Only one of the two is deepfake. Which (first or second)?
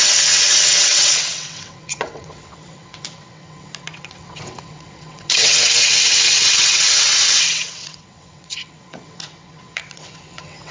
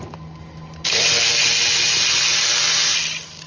first